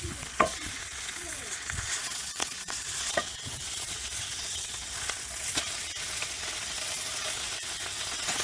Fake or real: fake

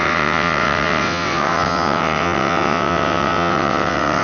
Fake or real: fake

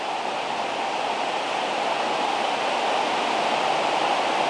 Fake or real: real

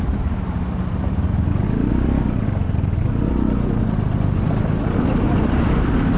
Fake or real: real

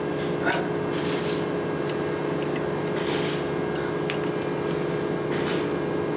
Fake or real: real